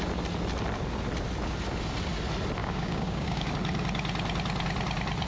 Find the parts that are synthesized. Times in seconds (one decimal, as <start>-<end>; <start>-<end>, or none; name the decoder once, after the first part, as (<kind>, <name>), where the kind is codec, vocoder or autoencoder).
2.6-3.5 (codec, DAC)